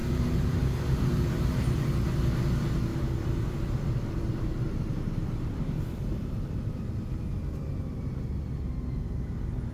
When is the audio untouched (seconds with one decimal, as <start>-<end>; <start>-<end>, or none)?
1.6-2.9; 6.9-9.7